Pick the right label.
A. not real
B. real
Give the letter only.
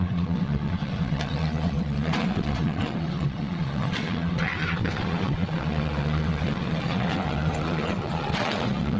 A